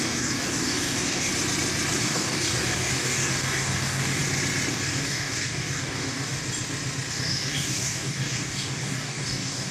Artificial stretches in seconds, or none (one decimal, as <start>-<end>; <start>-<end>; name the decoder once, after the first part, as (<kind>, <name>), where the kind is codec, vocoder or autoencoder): 0.0-1.3 (codec, DAC); 2.0-4.2; 4.7-6.4; 7.1-9.7